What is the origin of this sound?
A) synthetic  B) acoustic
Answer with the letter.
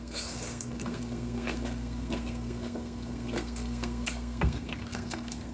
A